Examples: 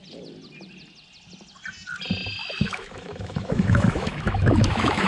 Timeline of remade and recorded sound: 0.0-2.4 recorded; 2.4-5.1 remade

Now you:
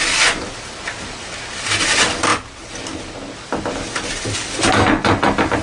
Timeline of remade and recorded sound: 0.0-5.6 recorded